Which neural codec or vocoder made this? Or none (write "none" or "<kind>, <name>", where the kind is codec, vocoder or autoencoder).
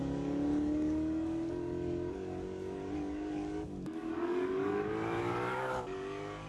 codec, DAC